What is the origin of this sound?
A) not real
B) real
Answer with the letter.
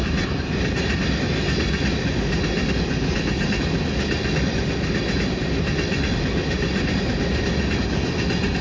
B